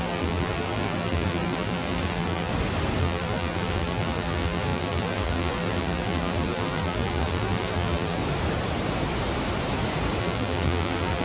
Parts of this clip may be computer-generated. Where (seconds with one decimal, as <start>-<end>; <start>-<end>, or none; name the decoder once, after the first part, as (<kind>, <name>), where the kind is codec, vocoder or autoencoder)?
0.0-2.5 (vocoder, BigVGAN v2); 3.0-8.2; 10.2-11.2